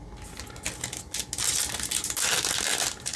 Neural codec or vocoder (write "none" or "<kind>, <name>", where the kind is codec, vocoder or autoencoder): none